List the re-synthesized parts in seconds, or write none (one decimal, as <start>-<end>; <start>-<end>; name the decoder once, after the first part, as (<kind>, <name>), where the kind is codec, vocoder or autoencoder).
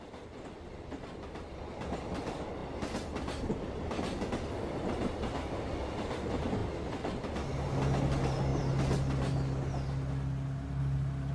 none